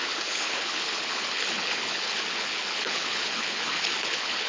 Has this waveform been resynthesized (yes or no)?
yes